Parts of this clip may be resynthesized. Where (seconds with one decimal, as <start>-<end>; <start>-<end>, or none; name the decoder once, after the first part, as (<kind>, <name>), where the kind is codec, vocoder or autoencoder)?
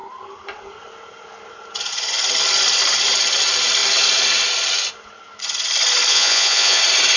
6.1-6.8 (vocoder, Vocos)